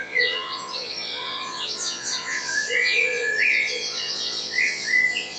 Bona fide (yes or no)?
no